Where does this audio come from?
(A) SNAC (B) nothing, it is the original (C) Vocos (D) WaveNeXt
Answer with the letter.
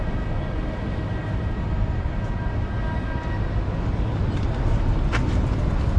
B